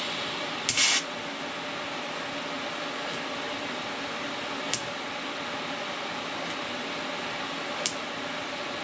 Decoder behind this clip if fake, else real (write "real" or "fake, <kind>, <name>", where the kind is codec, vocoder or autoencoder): real